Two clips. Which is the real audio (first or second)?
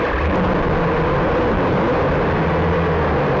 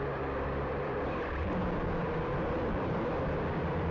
first